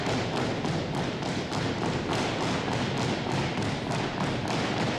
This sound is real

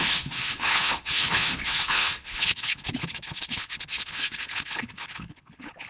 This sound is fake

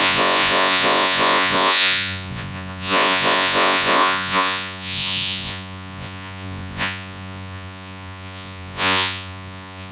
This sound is fake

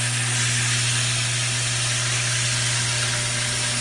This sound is real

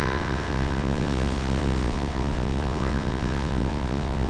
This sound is fake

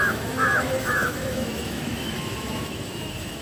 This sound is fake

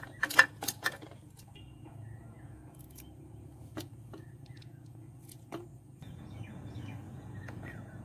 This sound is fake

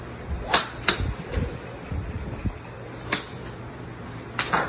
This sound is fake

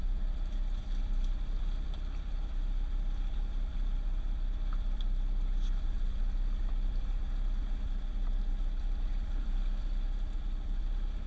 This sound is fake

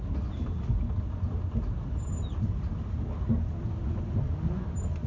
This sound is real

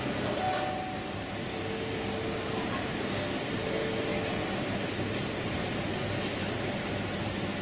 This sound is real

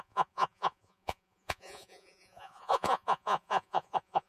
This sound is fake